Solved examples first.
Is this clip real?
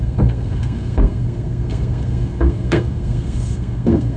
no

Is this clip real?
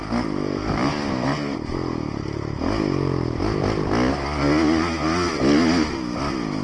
yes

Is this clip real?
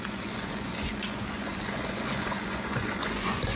no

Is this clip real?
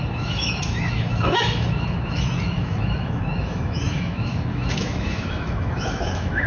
no